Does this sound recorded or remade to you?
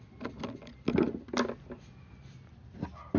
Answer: recorded